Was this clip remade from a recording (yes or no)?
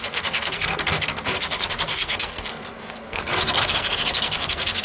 yes